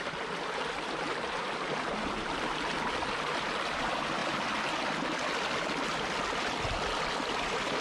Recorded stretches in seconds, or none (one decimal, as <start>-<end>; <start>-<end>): 0.0-7.8